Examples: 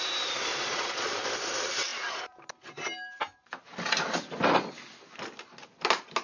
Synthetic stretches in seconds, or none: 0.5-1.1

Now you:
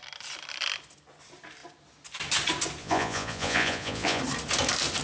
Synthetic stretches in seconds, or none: 2.8-4.2